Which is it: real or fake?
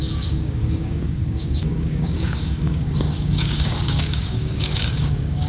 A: fake